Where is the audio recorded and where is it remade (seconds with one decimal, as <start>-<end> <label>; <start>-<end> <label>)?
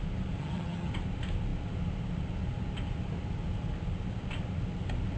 0.0-0.4 recorded; 0.4-0.9 remade; 0.9-5.2 recorded